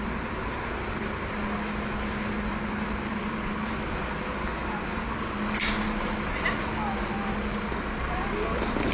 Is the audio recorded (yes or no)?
yes